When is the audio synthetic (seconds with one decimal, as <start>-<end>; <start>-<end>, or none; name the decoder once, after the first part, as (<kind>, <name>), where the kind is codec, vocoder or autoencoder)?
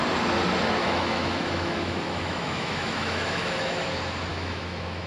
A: 0.8-3.9 (autoencoder, DAC-VAE); 4.3-5.1